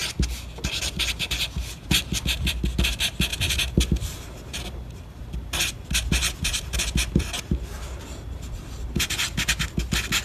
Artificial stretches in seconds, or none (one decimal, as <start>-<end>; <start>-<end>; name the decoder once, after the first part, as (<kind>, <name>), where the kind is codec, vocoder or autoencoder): none